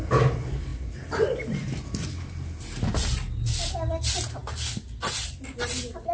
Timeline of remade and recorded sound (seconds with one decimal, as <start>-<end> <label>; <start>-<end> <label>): 0.0-6.1 recorded